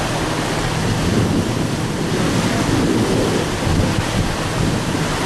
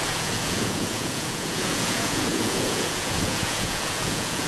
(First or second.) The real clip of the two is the first